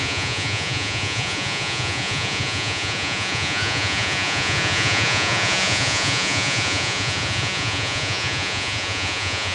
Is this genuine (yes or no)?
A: no